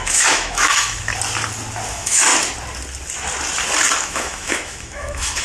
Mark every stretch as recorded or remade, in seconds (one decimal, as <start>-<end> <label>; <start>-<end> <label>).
0.0-1.1 remade; 1.1-1.9 recorded; 1.9-2.3 remade; 2.3-4.0 recorded; 4.0-5.4 remade